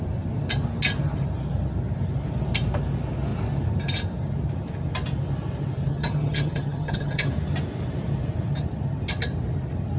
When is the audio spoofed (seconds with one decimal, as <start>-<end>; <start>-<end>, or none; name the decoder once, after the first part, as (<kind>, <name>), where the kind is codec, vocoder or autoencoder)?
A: 5.9-7.3 (vocoder, HiFi-GAN)